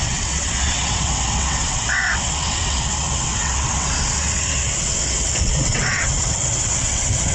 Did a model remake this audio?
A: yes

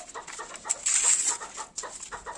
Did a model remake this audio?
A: no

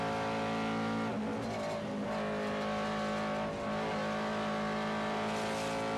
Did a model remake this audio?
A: no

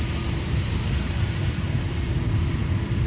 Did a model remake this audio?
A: no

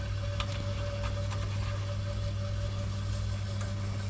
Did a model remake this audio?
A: no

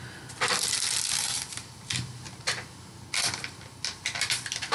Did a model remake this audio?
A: no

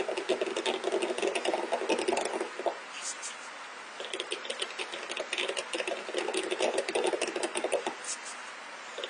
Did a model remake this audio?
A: no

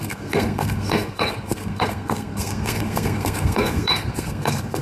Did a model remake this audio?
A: yes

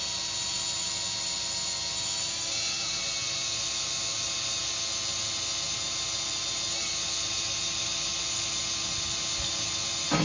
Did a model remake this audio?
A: no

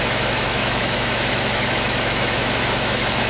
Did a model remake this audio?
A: yes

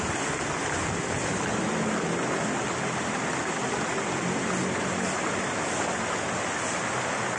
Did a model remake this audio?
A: no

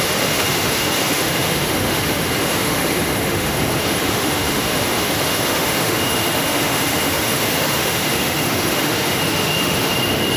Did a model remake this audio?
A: yes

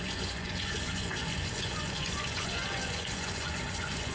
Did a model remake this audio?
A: yes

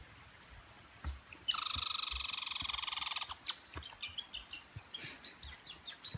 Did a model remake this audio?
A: no